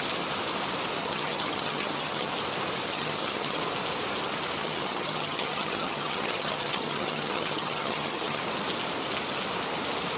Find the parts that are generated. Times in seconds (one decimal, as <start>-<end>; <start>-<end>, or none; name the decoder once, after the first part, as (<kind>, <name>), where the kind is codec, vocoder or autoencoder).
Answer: 1.0-2.3 (vocoder, HiFi-GAN); 2.9-3.6; 4.6-8.4